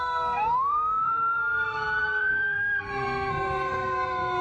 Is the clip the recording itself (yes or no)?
no